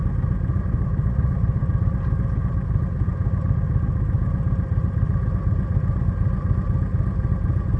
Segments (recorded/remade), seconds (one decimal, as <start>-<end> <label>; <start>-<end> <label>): 0.0-7.8 recorded